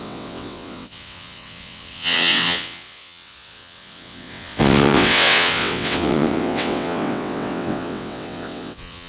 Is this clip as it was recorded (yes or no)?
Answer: no